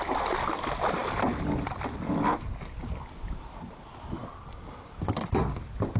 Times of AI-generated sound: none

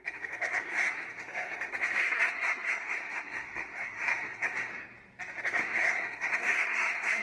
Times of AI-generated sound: 0.0-4.7 (codec, SNAC); 5.4-7.2

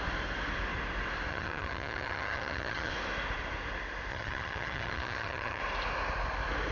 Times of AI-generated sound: 1.3-2.9 (vocoder, HiFi-GAN); 4.1-5.6

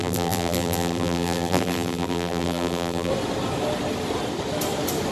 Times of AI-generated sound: 0.0-3.1 (vocoder, BigVGAN v2)